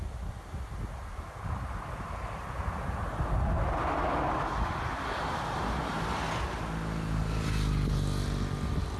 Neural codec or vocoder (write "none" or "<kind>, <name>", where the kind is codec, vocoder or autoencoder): none